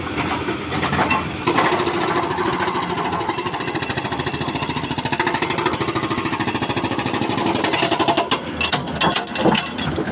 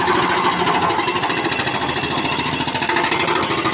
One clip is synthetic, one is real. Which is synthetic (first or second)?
first